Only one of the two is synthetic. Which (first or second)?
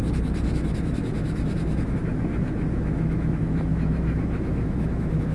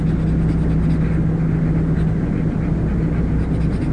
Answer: first